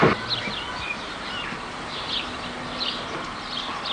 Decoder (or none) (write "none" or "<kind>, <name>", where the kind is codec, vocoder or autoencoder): none